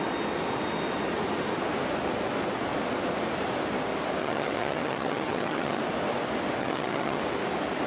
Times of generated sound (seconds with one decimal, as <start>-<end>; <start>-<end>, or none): 4.2-5.8; 6.6-7.2